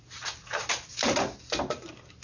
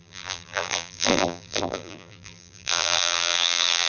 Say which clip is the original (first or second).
first